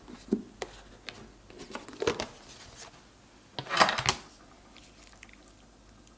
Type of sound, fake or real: real